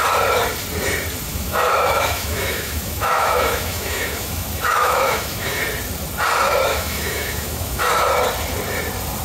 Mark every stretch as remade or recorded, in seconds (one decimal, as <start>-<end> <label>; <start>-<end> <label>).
0.0-1.3 recorded; 1.3-5.6 remade; 5.6-6.7 recorded; 6.7-7.8 remade; 7.8-9.2 recorded